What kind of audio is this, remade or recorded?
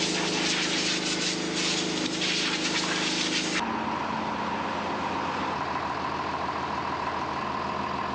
recorded